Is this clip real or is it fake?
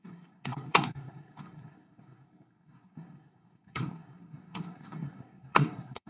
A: fake